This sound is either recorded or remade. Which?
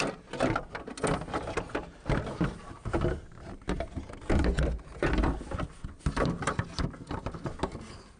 recorded